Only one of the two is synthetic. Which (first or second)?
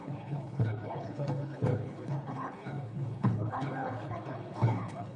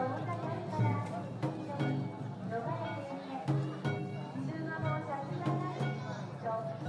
first